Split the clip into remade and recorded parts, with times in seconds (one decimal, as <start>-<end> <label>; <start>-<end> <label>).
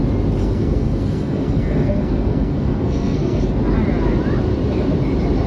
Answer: 0.0-0.4 recorded; 0.4-3.4 remade; 3.4-5.5 recorded